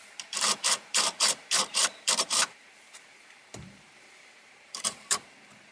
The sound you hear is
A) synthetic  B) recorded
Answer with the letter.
A